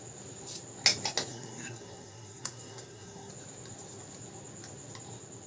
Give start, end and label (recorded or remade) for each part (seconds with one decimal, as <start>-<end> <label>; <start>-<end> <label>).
0.0-1.3 recorded; 1.3-3.3 remade; 3.3-5.5 recorded